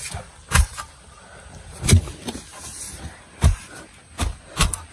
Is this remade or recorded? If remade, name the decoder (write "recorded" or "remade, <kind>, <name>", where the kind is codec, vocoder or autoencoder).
recorded